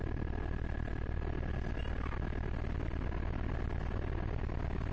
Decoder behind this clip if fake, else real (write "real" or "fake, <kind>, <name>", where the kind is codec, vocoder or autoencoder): real